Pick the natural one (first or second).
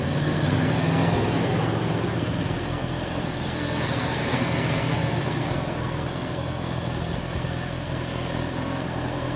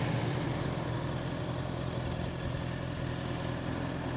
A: second